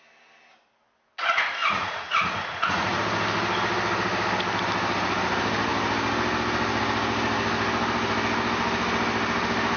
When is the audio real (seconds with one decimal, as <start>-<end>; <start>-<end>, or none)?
0.0-1.6; 3.0-9.8